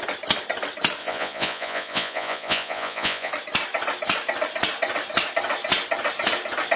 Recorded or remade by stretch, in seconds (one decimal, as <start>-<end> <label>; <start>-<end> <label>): 0.0-1.0 recorded; 1.0-3.3 remade; 3.3-6.8 recorded